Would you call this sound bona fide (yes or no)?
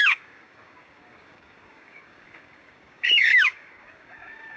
no